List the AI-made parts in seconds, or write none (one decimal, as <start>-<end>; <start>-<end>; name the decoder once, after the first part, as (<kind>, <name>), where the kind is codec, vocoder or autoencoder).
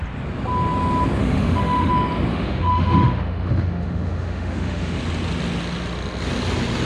1.2-1.9 (autoencoder, DAC-VAE); 2.3-5.0